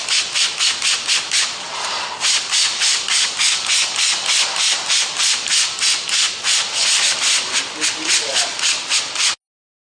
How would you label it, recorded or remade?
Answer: recorded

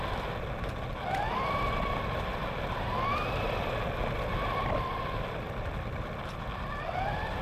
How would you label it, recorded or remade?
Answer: recorded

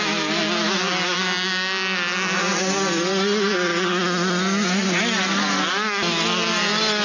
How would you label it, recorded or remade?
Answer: recorded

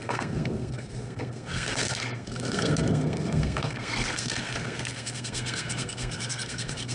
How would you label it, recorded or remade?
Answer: remade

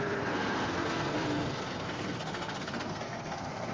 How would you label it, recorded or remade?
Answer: remade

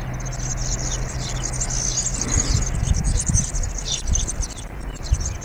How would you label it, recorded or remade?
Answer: recorded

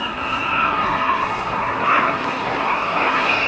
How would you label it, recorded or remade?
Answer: remade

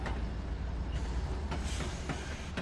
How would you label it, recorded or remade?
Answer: recorded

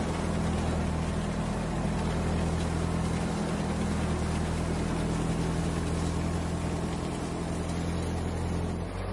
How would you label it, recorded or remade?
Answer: recorded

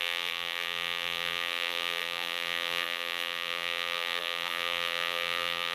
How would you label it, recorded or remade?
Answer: remade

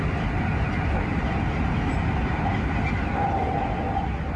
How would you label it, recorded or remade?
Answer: recorded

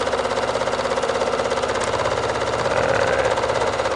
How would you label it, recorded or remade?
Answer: remade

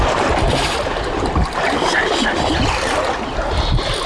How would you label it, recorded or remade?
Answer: recorded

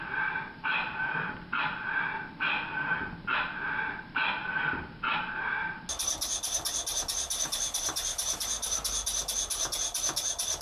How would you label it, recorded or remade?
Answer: recorded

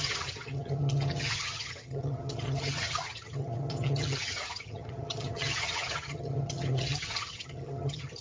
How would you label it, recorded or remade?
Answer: remade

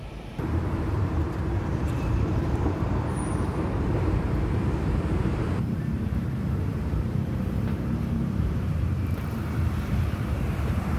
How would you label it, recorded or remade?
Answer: remade